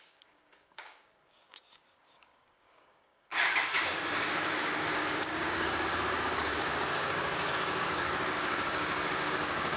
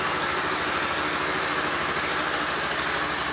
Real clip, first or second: second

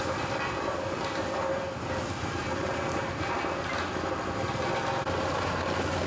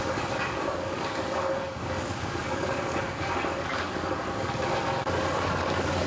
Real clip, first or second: first